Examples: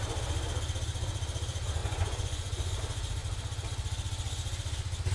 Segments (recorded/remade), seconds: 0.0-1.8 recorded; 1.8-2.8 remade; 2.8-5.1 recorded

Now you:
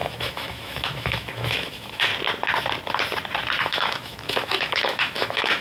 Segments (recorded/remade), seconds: 0.0-2.1 remade; 2.1-3.6 recorded; 3.6-5.6 remade